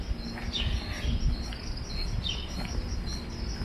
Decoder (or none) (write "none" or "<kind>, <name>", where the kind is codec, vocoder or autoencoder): none